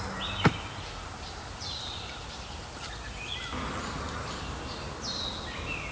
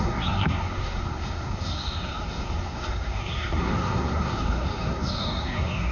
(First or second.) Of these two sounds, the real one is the first